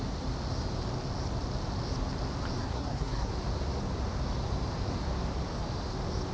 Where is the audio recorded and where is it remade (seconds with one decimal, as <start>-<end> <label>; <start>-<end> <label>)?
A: 0.0-2.6 recorded; 2.6-3.3 remade; 3.3-6.3 recorded